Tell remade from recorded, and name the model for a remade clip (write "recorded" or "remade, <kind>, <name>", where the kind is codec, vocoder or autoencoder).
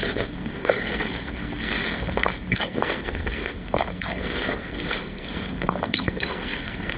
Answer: remade, codec, SNAC